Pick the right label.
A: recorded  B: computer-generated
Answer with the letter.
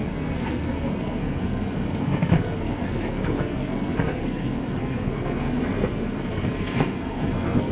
B